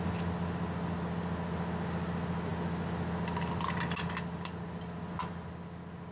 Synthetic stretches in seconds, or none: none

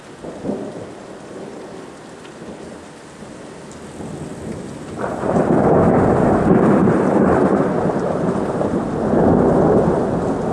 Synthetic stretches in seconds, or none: 4.3-5.4 (vocoder, BigVGAN v2); 6.8-8.8

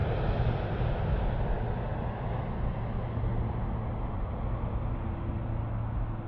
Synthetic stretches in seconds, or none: none

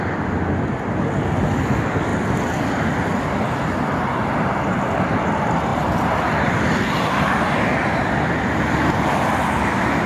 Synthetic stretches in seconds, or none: none

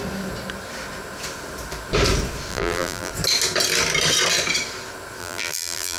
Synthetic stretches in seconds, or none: 2.5-3.1 (vocoder, BigVGAN v2); 5.2-6.0

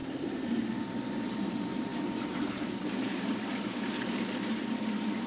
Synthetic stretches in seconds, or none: none

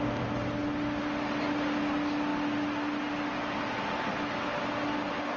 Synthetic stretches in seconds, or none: none

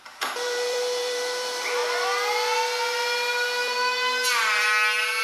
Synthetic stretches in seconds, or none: 0.0-1.8 (vocoder, BigVGAN v2)